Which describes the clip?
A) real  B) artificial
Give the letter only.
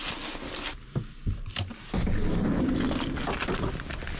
A